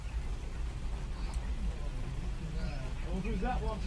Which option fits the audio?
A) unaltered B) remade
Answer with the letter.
A